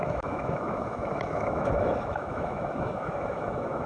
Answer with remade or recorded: remade